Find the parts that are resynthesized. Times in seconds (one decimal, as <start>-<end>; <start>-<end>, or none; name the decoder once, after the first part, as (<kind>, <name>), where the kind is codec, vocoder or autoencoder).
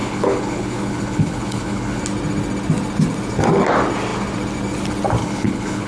0.0-2.0 (codec, HILCodec); 5.2-5.9